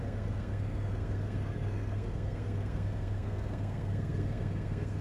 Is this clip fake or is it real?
fake